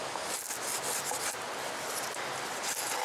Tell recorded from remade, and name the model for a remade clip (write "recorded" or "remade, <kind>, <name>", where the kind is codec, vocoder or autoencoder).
recorded